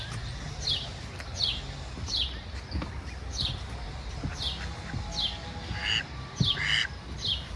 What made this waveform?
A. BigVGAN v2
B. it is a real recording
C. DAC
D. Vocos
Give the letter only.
B